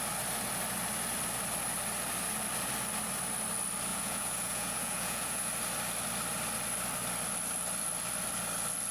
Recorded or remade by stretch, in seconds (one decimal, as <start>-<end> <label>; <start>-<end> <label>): 0.0-3.9 recorded; 3.9-5.5 remade; 5.5-8.9 recorded